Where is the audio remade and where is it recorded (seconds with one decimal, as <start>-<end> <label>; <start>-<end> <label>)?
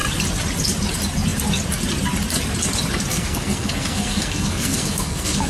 0.0-3.1 recorded; 3.1-5.5 remade